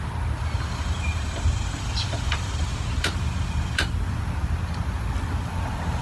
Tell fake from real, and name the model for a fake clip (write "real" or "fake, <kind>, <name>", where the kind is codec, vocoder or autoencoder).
real